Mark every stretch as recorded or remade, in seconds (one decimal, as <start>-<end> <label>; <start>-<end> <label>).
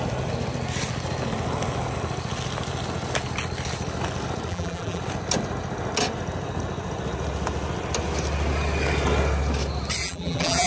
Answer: 0.0-4.5 recorded; 4.5-5.0 remade; 5.0-10.0 recorded; 10.0-10.7 remade